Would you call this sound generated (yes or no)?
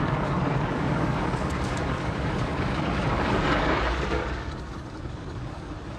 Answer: yes